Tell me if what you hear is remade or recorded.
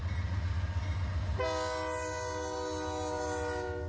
recorded